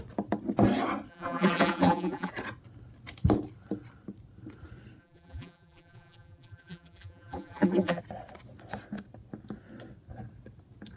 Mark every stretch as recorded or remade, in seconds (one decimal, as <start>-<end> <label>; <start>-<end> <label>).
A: 0.0-1.1 recorded; 1.1-2.3 remade; 2.3-5.0 recorded; 5.0-8.0 remade; 8.0-11.0 recorded